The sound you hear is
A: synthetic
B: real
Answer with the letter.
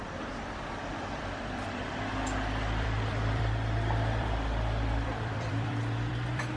A